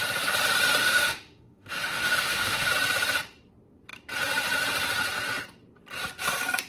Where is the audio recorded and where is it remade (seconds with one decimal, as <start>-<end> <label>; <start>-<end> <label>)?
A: 0.0-0.8 recorded; 0.8-2.7 remade; 2.7-6.7 recorded